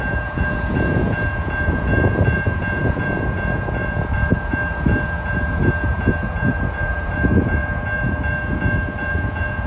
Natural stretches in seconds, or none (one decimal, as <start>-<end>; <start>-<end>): none